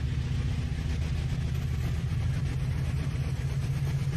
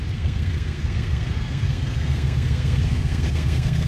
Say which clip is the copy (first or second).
second